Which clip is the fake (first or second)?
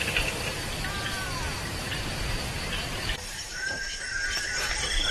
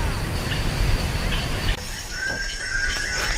first